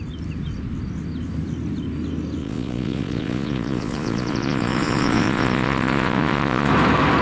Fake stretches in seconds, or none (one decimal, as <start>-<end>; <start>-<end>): 2.4-6.7